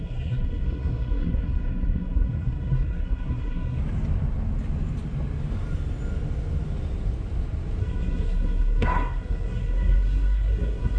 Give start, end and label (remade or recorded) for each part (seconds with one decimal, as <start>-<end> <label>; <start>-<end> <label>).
0.0-3.8 remade; 3.8-7.8 recorded; 7.8-11.0 remade